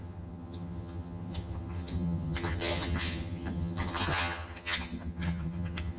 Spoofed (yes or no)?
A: yes